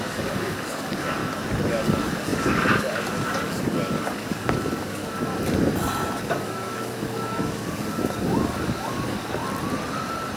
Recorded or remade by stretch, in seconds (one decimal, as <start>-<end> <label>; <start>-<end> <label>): 0.0-1.2 remade; 1.2-1.7 recorded; 1.7-5.3 remade; 5.3-6.2 recorded; 6.2-9.4 remade; 9.4-10.4 recorded